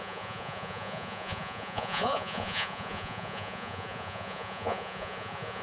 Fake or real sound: fake